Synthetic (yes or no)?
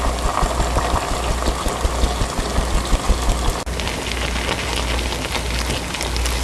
no